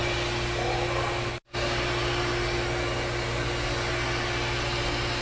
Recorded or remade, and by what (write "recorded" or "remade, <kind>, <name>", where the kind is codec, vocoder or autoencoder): recorded